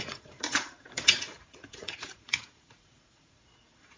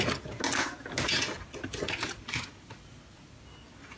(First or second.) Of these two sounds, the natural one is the second